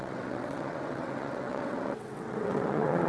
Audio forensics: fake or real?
fake